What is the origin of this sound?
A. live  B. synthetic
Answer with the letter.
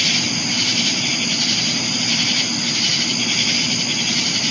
A